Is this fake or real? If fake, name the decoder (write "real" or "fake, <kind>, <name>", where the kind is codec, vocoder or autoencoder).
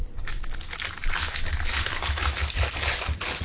real